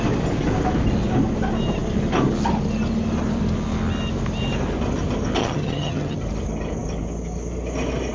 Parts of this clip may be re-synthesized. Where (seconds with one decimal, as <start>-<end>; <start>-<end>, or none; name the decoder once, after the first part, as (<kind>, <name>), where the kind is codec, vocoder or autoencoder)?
5.4-6.2 (vocoder, HiFi-GAN)